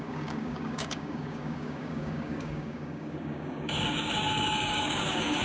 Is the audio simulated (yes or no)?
yes